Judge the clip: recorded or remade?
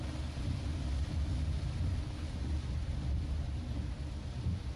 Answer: recorded